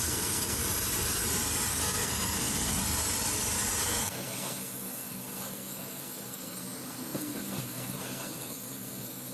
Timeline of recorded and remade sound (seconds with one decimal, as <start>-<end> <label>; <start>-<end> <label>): 0.0-0.6 remade; 0.6-1.7 recorded; 1.7-2.8 remade; 2.8-3.8 recorded; 3.8-9.3 remade